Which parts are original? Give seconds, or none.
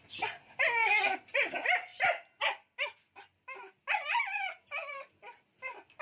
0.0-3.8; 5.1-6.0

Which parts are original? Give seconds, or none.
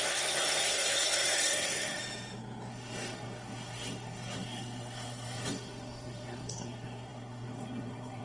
2.0-2.7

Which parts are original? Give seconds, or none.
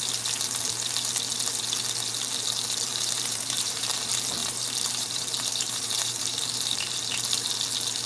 0.0-2.9; 3.9-4.4; 7.0-8.1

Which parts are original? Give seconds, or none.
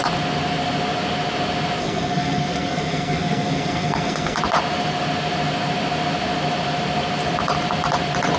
0.0-1.8; 4.4-8.4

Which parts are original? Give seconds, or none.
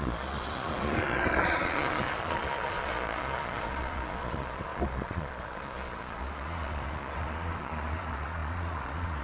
none